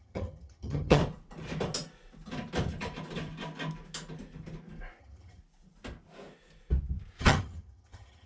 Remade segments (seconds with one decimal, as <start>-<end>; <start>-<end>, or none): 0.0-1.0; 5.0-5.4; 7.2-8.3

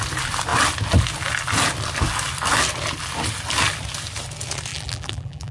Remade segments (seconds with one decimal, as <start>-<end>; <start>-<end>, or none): 4.7-5.5

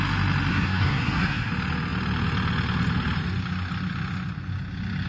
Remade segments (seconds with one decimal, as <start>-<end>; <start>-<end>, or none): 0.5-1.5

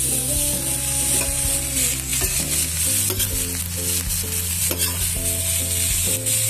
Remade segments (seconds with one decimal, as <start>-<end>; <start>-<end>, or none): 4.5-5.4

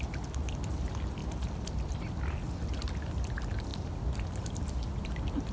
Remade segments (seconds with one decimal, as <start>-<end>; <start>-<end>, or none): none

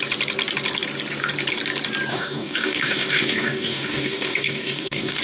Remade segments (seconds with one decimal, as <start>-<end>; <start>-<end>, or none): 2.1-5.2

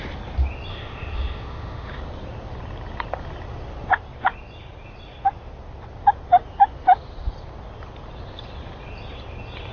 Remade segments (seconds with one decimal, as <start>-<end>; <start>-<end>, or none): 0.7-2.0